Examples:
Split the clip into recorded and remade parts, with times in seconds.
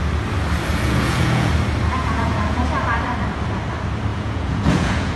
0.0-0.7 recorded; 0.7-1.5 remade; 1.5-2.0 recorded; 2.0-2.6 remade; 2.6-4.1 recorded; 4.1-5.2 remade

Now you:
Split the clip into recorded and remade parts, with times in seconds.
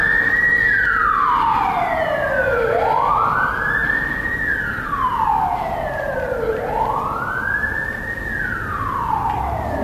0.0-9.8 recorded